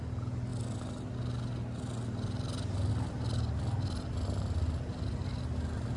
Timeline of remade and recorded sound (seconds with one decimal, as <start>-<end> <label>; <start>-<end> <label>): 0.0-6.0 recorded